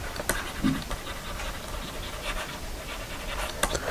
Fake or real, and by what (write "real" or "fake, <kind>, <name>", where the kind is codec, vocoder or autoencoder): real